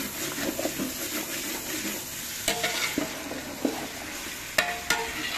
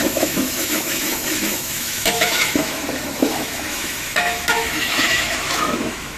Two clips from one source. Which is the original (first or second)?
first